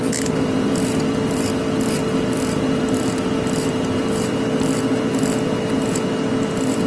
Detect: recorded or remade recorded